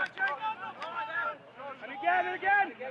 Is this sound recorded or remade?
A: recorded